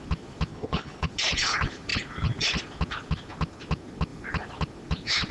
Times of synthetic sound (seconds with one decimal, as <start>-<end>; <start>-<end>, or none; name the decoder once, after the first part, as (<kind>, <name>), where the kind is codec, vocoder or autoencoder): 0.5-1.1 (codec, HILCodec)

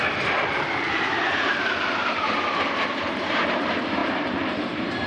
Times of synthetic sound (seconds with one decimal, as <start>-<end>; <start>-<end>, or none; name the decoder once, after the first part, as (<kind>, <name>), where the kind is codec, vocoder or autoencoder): 1.5-3.6 (vocoder, BigVGAN v2); 4.0-5.1

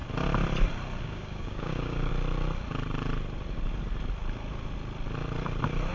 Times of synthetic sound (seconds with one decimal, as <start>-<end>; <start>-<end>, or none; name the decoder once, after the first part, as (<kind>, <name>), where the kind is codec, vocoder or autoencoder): 1.0-2.1 (codec, DAC)